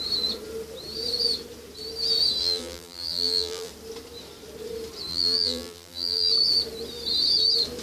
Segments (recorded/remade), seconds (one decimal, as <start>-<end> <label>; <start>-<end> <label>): 0.0-2.4 recorded; 2.4-3.7 remade; 3.7-5.1 recorded; 5.1-6.3 remade; 6.3-7.8 recorded